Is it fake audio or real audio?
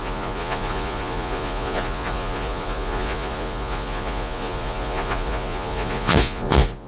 fake